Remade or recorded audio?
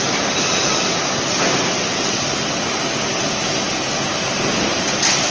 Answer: recorded